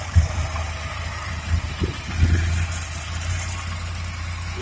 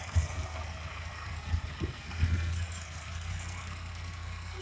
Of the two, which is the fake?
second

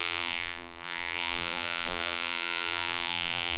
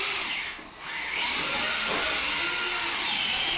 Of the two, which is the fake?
first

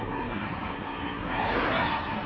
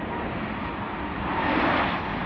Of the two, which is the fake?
first